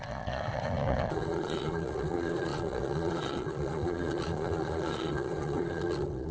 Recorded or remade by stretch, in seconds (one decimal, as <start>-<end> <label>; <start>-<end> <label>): 0.0-6.3 remade